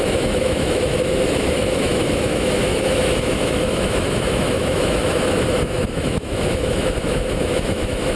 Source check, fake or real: fake